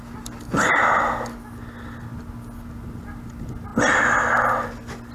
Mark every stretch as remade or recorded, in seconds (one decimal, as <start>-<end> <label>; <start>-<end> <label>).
0.0-5.1 recorded